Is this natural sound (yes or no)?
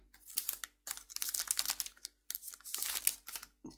yes